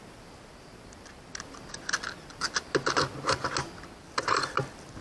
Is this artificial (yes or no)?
no